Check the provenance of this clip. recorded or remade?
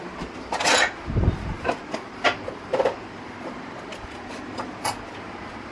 recorded